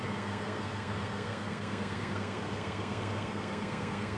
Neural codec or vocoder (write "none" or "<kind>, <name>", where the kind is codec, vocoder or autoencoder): codec, SNAC